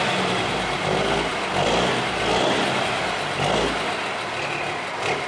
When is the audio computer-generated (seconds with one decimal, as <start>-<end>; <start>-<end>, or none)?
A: none

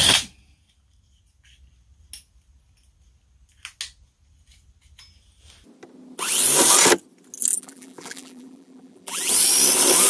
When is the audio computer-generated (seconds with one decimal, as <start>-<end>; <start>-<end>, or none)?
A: 7.5-9.3